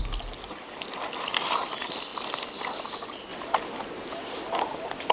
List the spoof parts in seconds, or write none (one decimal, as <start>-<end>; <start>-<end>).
none